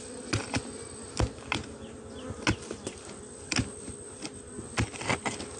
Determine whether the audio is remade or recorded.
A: recorded